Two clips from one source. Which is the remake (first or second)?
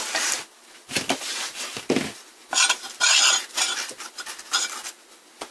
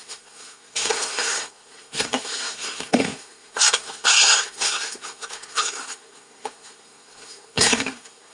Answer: second